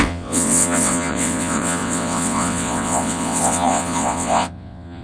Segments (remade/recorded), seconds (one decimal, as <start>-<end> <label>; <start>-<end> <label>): 0.0-5.0 remade